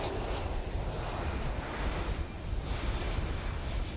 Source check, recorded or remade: recorded